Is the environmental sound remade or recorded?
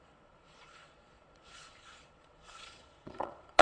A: remade